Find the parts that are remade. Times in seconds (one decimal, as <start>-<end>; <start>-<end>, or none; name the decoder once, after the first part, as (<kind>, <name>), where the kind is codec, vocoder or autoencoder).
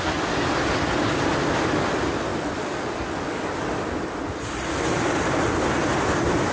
none